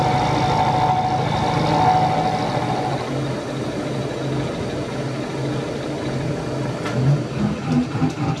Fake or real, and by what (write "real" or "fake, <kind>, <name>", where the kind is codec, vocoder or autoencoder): real